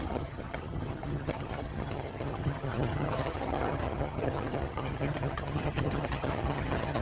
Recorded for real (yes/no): no